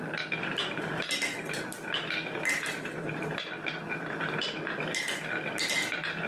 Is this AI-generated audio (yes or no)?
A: no